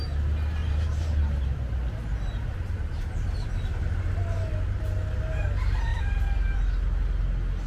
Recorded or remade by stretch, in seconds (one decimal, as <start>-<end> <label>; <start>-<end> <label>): 0.0-0.6 recorded; 0.6-3.5 remade; 3.5-5.9 recorded; 5.9-6.6 remade; 6.6-7.7 recorded